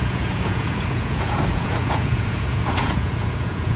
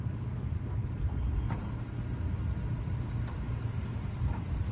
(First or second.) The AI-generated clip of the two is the first